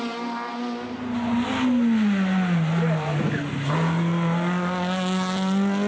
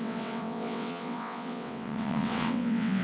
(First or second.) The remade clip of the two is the second